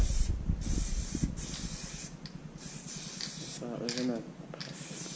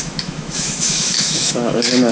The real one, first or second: first